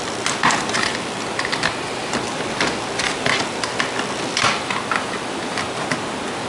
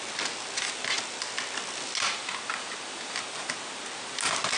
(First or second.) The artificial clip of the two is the first